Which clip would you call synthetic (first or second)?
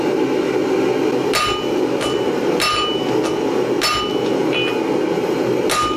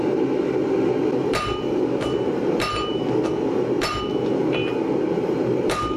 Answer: second